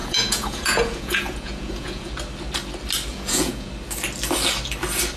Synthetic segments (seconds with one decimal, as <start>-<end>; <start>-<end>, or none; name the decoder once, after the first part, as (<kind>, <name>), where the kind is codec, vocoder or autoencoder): 0.0-2.1 (vocoder, Vocos); 3.1-3.7